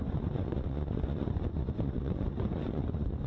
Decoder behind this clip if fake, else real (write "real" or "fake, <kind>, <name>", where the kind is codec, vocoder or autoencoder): fake, vocoder, Vocos